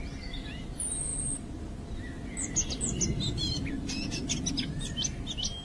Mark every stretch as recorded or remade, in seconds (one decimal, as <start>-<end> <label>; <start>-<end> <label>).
0.0-5.6 recorded